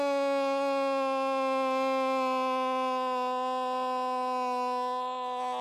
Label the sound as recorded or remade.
recorded